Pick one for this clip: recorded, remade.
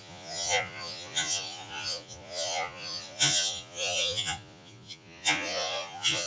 remade